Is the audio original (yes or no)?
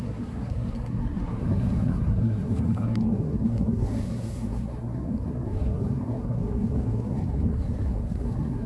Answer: no